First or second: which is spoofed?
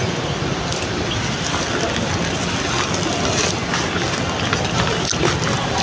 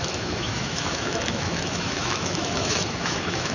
second